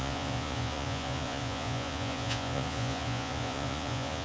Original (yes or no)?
no